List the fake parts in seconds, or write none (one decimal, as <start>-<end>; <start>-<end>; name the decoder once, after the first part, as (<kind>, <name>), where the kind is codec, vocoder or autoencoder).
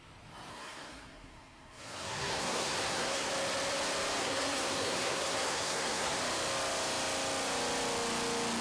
0.5-3.3 (codec, SNAC); 4.2-6.2